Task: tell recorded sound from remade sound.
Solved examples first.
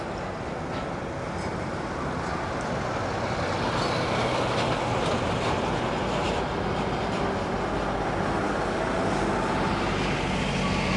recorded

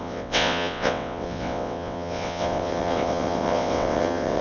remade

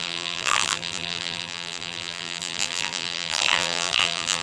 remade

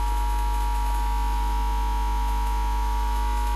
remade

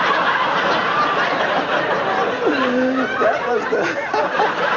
recorded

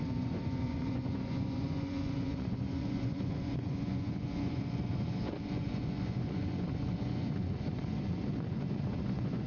remade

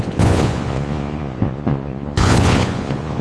remade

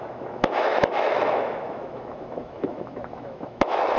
remade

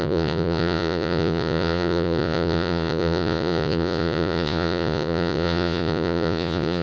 remade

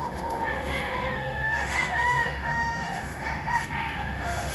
remade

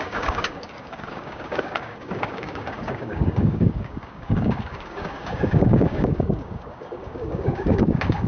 remade